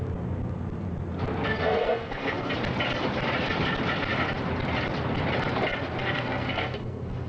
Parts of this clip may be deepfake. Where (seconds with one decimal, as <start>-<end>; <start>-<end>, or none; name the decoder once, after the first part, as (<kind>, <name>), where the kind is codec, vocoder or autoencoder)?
1.5-2.5 (codec, SNAC); 6.0-7.3